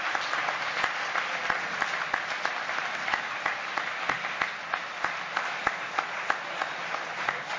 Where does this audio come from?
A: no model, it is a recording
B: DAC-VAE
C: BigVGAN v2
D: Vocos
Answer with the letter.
C